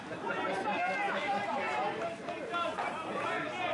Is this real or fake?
real